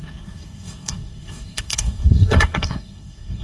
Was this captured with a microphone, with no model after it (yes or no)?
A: no